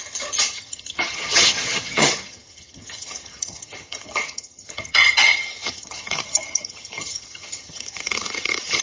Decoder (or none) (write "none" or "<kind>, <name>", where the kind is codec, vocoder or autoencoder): vocoder, HiFi-GAN